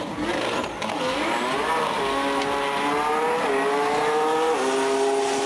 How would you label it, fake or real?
real